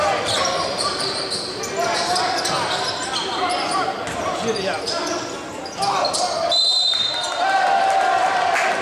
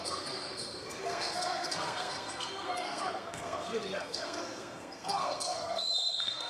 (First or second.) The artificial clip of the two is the second